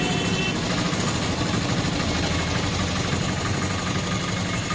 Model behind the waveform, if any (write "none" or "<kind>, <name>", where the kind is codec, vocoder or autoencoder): none